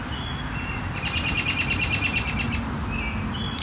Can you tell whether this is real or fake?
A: real